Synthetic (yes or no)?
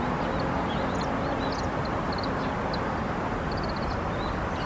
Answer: no